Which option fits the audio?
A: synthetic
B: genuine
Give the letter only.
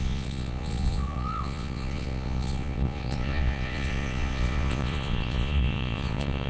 A